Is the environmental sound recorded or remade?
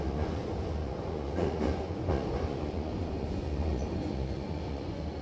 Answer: remade